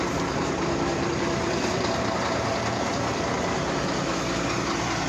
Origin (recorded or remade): recorded